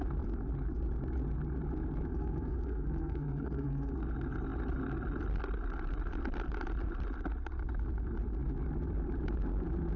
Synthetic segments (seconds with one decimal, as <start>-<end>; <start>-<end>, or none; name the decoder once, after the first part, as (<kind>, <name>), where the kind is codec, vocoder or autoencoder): 2.1-3.9 (codec, SNAC)